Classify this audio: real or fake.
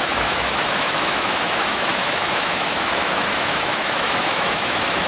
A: fake